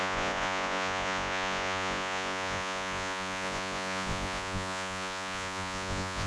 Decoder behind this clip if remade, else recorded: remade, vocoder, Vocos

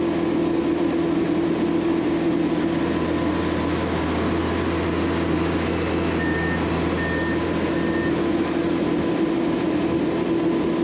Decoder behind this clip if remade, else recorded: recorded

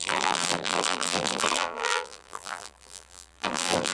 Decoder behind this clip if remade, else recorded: remade, vocoder, BigVGAN v2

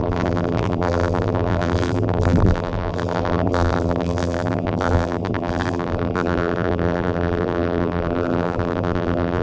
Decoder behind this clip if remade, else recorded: remade, vocoder, BigVGAN v2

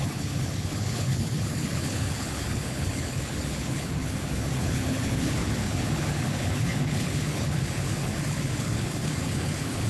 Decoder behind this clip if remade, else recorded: remade, codec, HILCodec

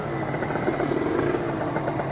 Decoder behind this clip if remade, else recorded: recorded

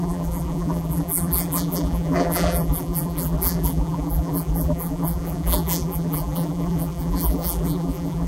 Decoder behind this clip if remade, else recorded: remade, vocoder, BigVGAN v2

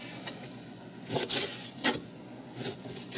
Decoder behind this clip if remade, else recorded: remade, vocoder, Vocos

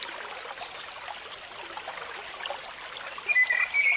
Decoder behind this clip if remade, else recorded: recorded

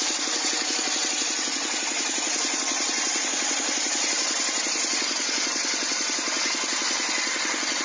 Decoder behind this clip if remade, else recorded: recorded